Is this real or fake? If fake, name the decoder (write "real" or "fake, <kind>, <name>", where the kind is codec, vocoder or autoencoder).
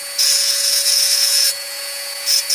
fake, vocoder, Vocos